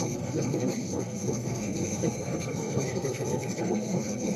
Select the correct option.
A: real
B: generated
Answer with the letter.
B